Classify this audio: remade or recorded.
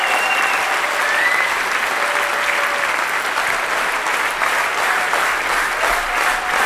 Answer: recorded